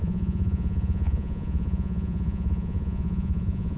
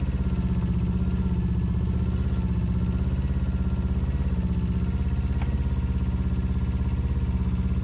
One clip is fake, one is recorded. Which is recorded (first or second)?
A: second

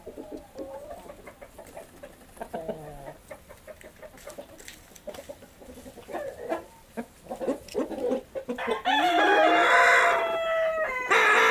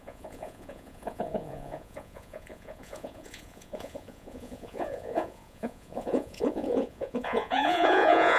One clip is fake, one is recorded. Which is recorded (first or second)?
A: first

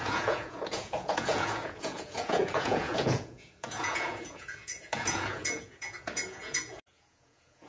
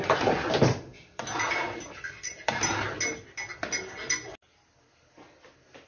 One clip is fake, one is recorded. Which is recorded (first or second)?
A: second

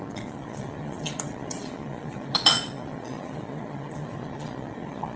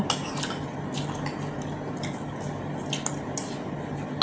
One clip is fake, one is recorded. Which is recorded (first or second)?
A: second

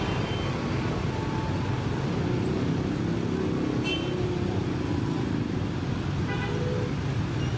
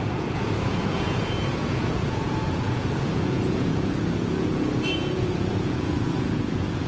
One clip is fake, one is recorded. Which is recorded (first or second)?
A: first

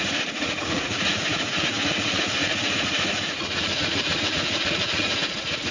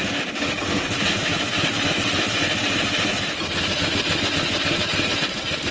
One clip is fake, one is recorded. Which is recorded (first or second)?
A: second